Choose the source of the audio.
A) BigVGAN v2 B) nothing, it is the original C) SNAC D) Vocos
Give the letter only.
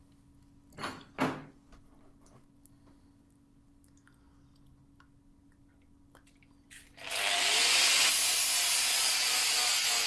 B